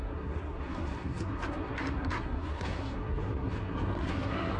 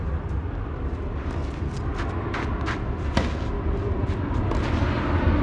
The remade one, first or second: first